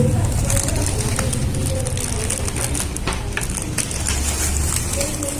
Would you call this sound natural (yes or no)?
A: yes